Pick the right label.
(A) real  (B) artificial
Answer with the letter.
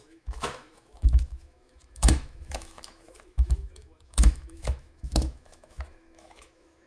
B